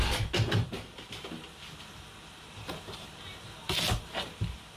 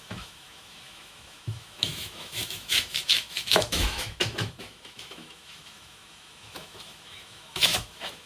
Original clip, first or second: first